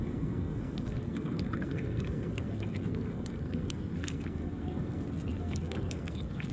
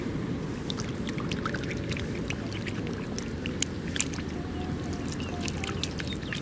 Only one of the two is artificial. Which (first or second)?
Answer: first